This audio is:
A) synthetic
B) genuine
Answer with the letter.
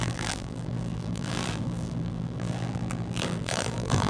A